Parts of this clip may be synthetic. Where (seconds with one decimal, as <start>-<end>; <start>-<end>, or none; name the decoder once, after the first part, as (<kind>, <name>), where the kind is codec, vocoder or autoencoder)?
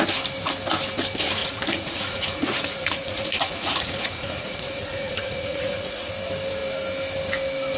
1.4-6.1 (vocoder, Vocos)